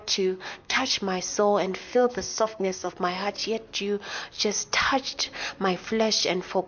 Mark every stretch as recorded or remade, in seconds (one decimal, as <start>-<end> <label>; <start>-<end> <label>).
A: 0.0-0.9 remade; 0.9-1.8 recorded; 1.8-2.9 remade; 2.9-6.7 recorded